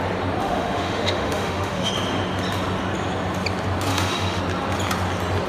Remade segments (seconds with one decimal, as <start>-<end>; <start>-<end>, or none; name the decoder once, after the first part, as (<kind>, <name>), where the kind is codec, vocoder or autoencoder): 0.4-1.9 (autoencoder, DAC-VAE); 3.9-4.4